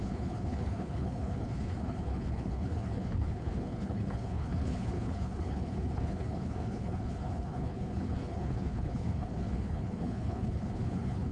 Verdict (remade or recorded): remade